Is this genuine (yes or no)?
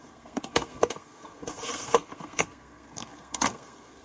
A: no